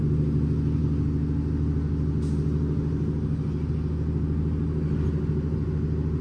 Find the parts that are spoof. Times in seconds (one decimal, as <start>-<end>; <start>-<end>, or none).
none